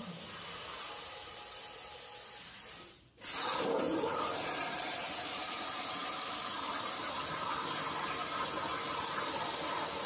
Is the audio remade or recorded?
recorded